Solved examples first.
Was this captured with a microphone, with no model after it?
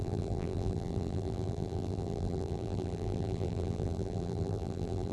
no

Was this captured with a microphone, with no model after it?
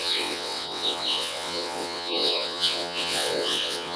no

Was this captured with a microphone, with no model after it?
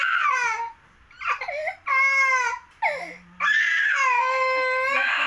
yes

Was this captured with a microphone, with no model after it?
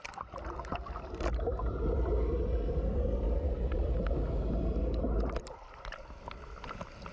yes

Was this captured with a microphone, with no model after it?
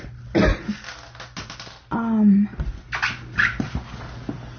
yes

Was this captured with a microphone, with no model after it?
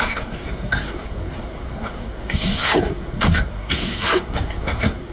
no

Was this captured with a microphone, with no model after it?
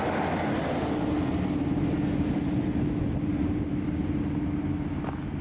yes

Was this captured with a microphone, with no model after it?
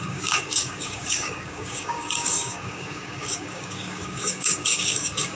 no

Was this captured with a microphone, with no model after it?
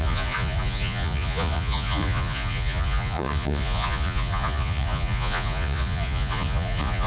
no